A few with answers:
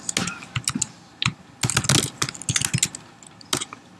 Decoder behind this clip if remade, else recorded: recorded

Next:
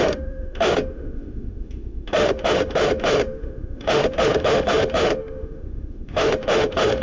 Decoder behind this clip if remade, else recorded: remade, autoencoder, DAC-VAE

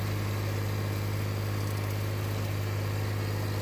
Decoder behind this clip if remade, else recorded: recorded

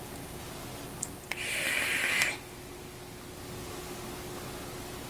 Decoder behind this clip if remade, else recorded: recorded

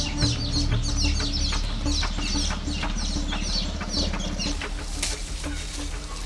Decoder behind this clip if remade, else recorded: recorded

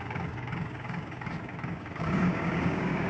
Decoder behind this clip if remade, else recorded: remade, codec, DAC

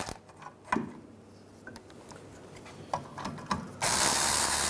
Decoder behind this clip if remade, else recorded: recorded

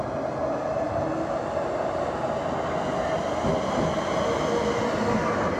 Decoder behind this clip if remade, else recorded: recorded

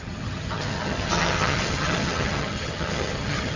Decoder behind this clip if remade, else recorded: remade, vocoder, HiFi-GAN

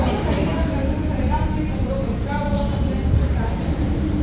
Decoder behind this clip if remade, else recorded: remade, vocoder, BigVGAN v2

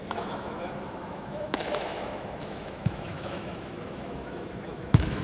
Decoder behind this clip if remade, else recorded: remade, autoencoder, DAC-VAE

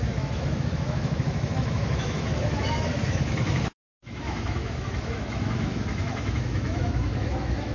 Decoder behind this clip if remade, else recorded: remade, autoencoder, DAC-VAE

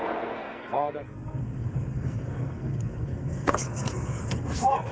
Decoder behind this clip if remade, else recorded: remade, codec, SNAC